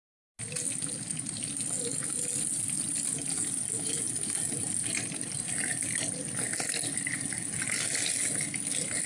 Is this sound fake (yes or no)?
no